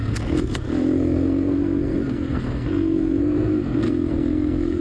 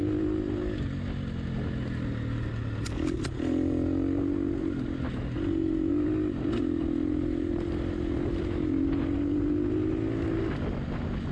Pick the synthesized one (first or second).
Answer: first